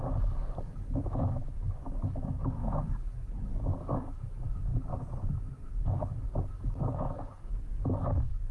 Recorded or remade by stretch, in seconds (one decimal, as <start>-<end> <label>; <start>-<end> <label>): 0.0-4.7 remade; 4.7-5.8 recorded; 5.8-8.5 remade